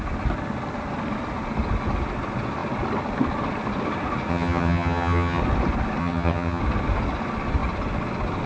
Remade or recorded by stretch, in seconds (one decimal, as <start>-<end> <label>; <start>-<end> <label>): 0.0-4.3 recorded; 4.3-5.4 remade; 5.4-6.0 recorded; 6.0-6.6 remade; 6.6-8.5 recorded